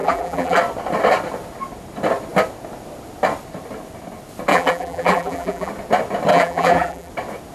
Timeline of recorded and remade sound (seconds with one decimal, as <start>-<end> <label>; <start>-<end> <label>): 0.0-0.6 remade; 0.6-4.5 recorded; 4.5-5.7 remade; 5.7-6.3 recorded; 6.3-7.1 remade; 7.1-7.5 recorded